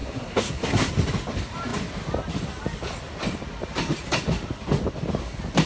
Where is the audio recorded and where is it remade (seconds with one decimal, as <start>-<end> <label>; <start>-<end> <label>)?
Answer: 0.0-0.9 remade; 0.9-5.7 recorded